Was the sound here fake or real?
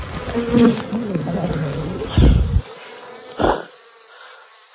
real